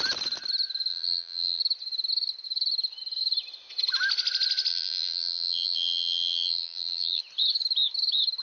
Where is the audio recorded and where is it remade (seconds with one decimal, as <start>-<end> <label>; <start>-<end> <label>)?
0.0-0.9 recorded; 0.9-1.6 remade; 1.6-4.7 recorded; 4.7-7.2 remade; 7.2-8.4 recorded